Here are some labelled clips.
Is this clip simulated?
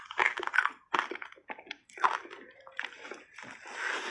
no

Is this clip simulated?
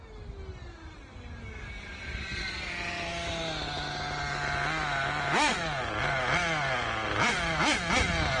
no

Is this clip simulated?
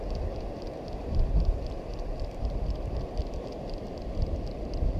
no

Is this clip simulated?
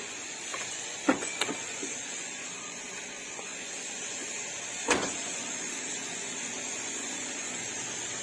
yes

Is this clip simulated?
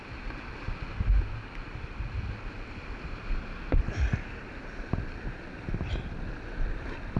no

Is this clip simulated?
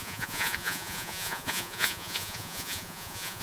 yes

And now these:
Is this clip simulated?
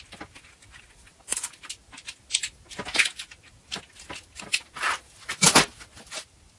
no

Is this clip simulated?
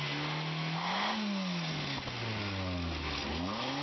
no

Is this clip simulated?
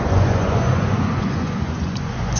yes